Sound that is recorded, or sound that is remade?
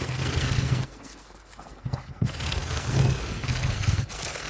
remade